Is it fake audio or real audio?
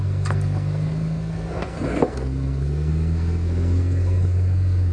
fake